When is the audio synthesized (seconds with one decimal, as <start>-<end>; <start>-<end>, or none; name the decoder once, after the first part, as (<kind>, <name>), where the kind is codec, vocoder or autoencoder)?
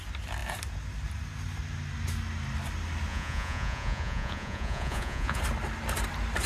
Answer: 3.1-5.4 (vocoder, Vocos)